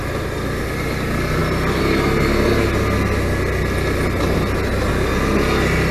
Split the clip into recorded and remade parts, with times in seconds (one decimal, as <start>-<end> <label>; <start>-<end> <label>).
0.0-5.9 recorded